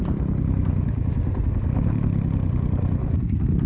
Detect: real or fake real